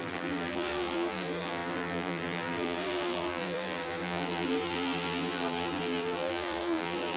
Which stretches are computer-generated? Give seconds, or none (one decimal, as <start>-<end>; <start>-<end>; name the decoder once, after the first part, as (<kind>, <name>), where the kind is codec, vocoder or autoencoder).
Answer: 0.0-7.2 (vocoder, BigVGAN v2)